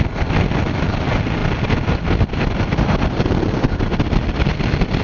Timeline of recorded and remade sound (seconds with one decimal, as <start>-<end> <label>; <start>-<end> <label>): 0.0-5.0 recorded